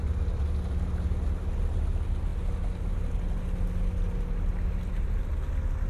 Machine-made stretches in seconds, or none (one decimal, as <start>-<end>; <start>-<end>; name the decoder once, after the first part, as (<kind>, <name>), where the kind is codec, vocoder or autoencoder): none